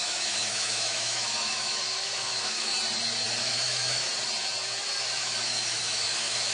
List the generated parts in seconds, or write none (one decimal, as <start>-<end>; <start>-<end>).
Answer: 0.0-2.7; 3.4-4.0; 5.0-6.5